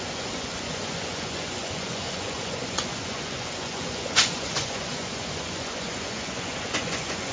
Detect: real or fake fake